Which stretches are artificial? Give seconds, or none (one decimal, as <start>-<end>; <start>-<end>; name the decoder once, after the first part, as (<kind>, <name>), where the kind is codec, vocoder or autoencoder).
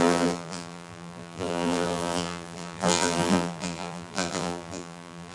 0.0-5.3 (vocoder, BigVGAN v2)